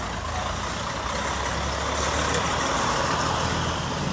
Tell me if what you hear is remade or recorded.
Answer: recorded